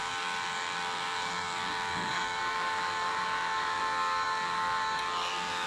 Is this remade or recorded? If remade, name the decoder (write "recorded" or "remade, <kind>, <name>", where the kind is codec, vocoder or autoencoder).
remade, codec, DAC